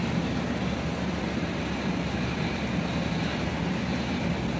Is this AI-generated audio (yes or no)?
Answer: no